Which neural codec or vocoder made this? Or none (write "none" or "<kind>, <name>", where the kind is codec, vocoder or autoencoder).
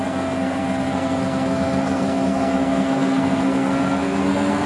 codec, SNAC